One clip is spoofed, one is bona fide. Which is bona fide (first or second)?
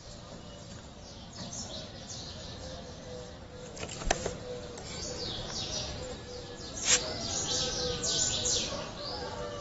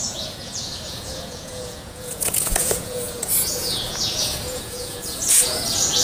first